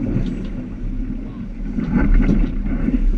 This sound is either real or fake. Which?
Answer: real